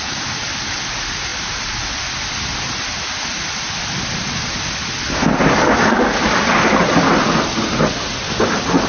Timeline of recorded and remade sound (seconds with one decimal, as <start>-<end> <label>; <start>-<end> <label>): 0.0-8.9 recorded